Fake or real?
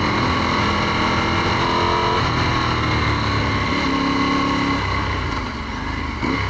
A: real